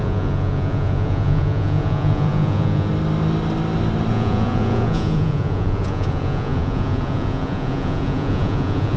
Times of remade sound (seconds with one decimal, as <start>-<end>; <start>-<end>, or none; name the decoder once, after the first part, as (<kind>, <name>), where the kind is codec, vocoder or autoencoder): 0.0-2.9 (vocoder, Vocos); 4.1-9.0